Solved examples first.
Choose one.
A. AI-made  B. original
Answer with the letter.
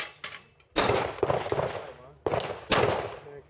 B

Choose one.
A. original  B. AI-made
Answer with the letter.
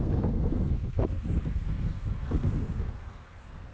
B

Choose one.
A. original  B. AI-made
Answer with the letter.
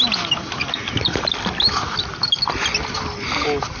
A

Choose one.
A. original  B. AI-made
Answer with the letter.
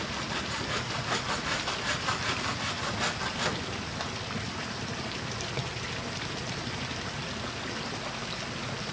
A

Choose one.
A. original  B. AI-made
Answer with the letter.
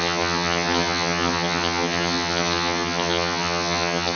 B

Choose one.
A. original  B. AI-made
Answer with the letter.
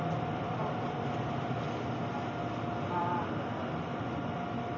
A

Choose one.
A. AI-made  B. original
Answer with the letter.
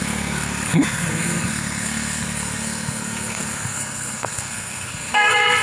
A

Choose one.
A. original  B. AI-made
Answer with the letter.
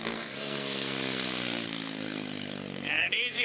B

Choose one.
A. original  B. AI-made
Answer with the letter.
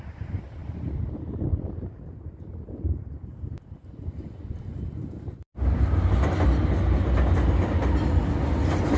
A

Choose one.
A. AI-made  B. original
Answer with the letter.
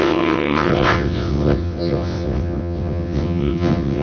A